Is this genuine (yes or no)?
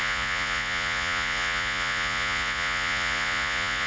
no